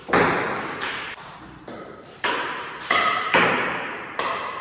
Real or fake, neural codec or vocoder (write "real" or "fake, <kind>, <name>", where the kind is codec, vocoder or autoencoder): fake, vocoder, BigVGAN v2